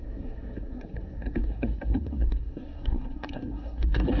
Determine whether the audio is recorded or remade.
remade